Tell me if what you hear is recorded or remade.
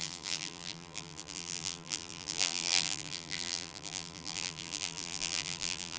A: remade